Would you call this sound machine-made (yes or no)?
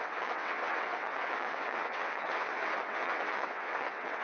yes